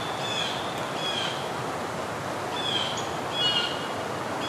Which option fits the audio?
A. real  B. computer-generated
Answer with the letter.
A